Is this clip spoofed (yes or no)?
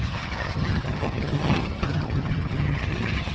yes